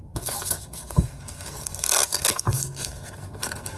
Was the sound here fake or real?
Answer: fake